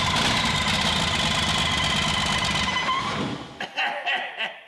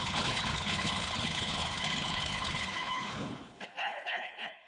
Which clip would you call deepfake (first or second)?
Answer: second